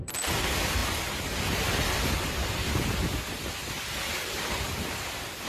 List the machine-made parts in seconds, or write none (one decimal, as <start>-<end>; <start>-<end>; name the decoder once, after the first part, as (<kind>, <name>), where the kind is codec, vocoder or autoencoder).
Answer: 0.0-0.8 (vocoder, BigVGAN v2); 1.4-3.6; 4.3-5.5